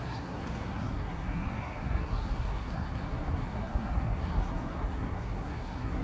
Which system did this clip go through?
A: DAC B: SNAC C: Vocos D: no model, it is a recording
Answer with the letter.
B